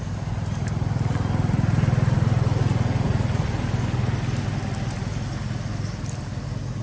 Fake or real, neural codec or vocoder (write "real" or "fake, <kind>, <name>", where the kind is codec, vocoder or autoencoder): real